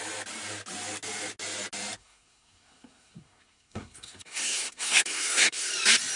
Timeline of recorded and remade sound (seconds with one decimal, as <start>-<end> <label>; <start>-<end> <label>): 0.0-2.0 recorded; 2.0-5.7 remade; 5.7-6.2 recorded